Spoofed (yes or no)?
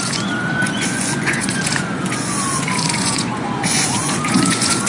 yes